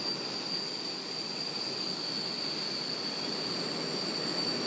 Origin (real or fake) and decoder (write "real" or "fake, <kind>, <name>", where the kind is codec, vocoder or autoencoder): real